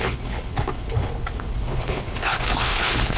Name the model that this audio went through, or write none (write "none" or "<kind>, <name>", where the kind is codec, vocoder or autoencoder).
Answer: codec, HILCodec